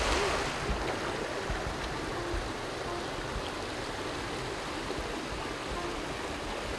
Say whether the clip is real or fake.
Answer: real